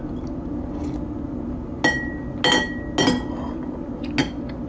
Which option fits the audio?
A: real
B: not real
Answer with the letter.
A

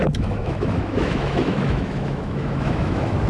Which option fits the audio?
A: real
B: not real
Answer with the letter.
B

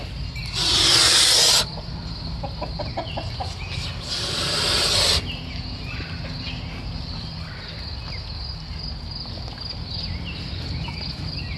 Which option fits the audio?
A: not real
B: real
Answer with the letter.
B